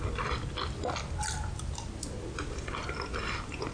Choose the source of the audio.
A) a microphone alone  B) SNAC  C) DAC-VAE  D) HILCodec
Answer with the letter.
A